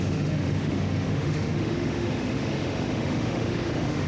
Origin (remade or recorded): remade